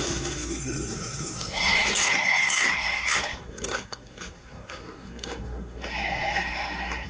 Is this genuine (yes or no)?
no